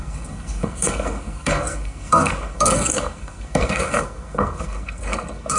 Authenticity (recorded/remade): remade